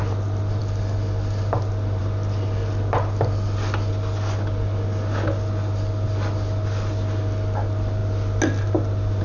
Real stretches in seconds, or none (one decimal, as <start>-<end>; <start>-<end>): 0.0-9.2